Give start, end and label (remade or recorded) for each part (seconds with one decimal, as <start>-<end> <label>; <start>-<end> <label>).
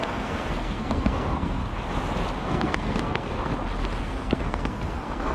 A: 0.0-1.6 remade; 1.6-2.4 recorded; 2.4-3.5 remade; 3.5-4.0 recorded; 4.0-5.3 remade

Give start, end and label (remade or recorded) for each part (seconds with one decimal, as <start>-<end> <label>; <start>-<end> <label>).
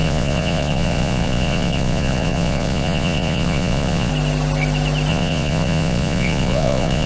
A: 0.0-4.1 remade; 4.1-5.1 recorded; 5.1-7.1 remade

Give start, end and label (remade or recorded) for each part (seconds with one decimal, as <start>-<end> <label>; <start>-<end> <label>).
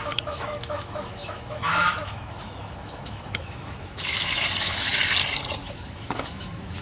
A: 0.0-5.0 remade; 5.0-5.6 recorded; 5.6-6.8 remade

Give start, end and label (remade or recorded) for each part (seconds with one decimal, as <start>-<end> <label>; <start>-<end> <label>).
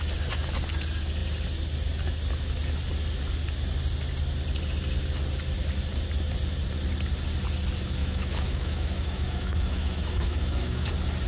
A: 0.0-8.0 recorded; 8.0-10.9 remade; 10.9-11.3 recorded